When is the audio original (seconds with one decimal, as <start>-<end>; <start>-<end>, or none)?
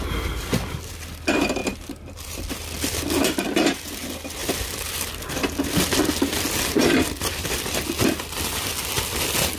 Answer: 0.0-1.6; 3.3-6.8; 7.8-9.6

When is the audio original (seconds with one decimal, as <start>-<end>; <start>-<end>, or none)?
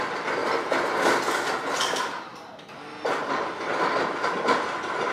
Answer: 0.0-5.1